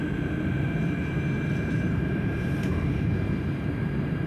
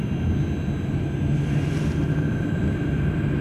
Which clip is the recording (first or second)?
second